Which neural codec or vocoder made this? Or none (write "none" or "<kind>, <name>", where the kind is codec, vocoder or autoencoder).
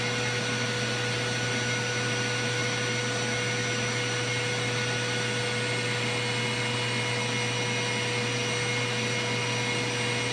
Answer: none